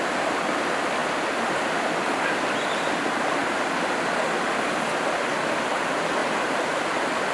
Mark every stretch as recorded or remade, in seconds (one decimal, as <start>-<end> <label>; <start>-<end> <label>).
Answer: 0.0-7.3 recorded